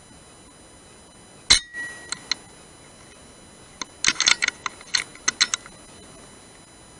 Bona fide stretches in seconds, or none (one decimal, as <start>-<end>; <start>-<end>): 0.0-7.0